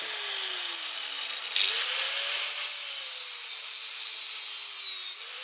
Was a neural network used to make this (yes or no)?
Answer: no